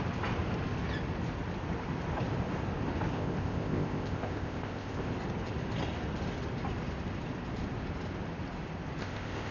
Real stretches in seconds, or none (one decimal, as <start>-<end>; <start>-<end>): 0.0-3.1; 5.1-9.0